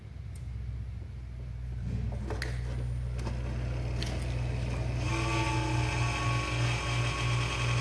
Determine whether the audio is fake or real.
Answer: real